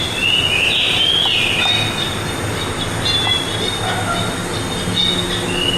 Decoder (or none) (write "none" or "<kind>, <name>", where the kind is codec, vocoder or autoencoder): none